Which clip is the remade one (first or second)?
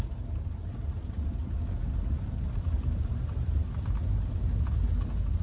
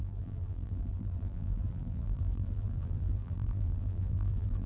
second